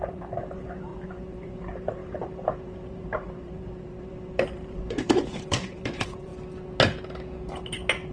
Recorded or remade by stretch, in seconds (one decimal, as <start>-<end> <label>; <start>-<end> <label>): 0.0-6.3 remade; 6.3-8.1 recorded